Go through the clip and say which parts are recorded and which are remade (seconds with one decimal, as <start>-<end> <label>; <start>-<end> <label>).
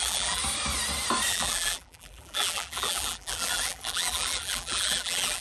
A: 0.0-0.4 remade; 0.4-1.3 recorded; 1.3-5.4 remade